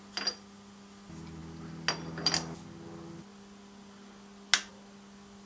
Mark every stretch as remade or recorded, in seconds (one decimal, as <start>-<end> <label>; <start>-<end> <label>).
0.0-5.5 recorded